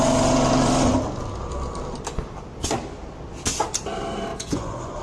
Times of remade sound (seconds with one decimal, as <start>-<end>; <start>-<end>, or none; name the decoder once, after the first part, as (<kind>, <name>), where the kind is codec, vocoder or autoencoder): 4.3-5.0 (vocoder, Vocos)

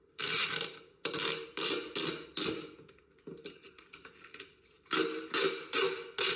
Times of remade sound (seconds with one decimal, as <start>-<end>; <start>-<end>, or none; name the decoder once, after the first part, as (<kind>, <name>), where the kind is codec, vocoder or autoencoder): none

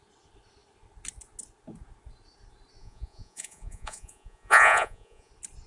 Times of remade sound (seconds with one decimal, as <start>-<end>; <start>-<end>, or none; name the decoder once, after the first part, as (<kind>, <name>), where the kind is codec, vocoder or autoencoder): 2.8-5.3 (vocoder, Vocos)

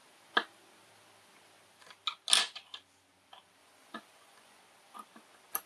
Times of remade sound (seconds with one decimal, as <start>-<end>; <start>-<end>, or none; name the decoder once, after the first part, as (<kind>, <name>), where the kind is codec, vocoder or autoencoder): 3.6-4.6 (vocoder, Vocos)